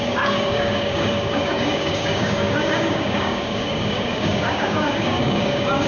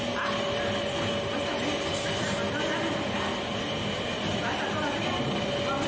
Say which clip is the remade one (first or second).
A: first